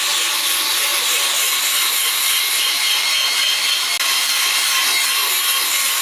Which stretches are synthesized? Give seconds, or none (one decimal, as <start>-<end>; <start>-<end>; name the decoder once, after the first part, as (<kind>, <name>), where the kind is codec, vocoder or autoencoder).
none

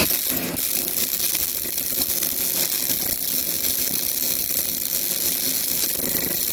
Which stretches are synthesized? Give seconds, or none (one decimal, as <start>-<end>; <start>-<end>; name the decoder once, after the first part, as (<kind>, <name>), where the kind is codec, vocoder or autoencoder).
none

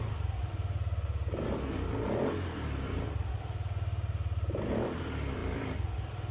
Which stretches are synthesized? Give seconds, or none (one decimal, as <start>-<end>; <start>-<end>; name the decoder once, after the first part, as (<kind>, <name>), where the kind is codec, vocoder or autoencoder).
none

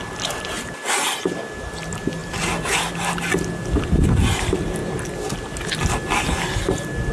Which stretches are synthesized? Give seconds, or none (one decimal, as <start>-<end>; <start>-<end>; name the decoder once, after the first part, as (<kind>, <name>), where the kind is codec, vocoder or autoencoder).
none

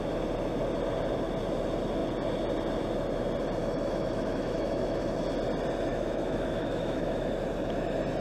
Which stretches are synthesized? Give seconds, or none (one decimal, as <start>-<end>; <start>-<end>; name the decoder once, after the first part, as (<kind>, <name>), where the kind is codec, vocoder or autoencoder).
3.6-5.0 (autoencoder, DAC-VAE); 5.9-7.3

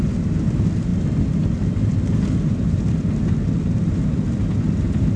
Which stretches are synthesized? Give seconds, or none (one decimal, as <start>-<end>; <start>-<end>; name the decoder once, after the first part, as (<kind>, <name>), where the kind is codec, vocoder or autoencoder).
none